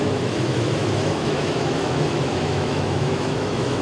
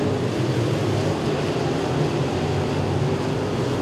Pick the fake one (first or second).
first